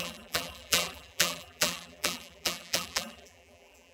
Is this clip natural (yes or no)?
no